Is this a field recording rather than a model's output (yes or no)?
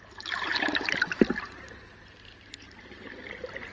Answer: yes